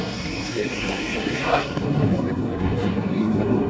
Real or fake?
fake